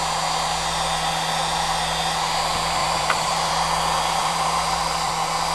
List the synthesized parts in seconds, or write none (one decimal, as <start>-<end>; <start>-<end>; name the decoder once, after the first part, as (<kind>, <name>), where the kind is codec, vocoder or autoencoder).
2.8-3.5 (vocoder, BigVGAN v2); 4.2-5.1